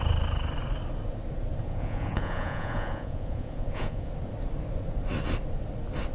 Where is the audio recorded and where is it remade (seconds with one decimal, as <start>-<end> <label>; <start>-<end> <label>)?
0.0-1.6 recorded; 1.6-4.1 remade; 4.1-6.1 recorded